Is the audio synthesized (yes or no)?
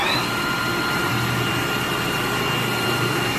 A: yes